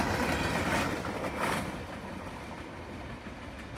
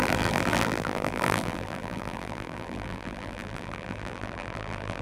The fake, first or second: second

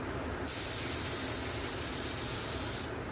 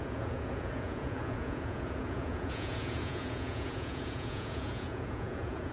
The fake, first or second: second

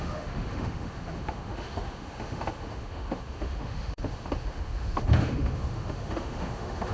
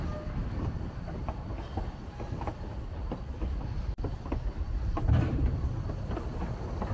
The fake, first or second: first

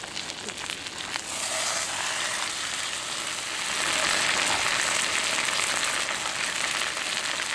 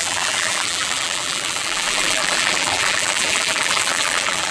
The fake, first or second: second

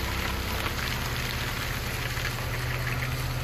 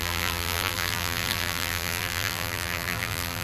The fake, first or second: second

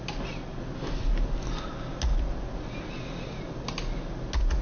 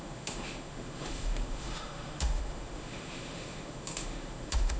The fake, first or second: second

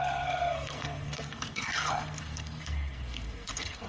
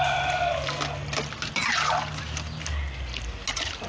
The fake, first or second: first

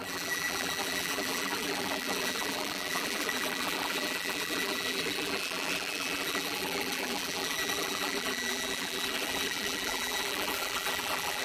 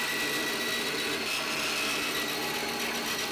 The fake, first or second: first